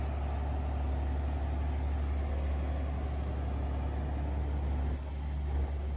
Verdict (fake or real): real